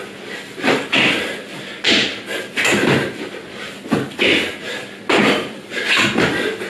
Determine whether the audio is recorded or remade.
recorded